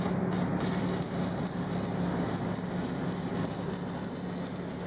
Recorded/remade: recorded